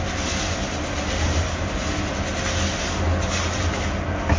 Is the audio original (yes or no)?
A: yes